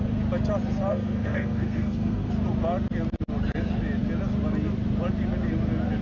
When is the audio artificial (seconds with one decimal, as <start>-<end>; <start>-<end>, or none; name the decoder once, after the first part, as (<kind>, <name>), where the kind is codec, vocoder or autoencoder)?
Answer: 0.9-2.3 (codec, SNAC)